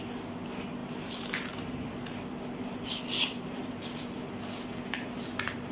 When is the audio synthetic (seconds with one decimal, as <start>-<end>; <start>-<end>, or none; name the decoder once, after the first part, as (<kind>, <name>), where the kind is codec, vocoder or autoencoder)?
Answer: 0.8-1.9 (vocoder, BigVGAN v2)